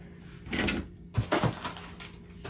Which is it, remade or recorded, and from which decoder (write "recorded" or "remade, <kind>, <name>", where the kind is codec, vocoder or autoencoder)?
recorded